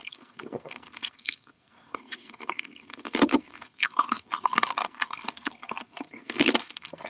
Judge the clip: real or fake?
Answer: fake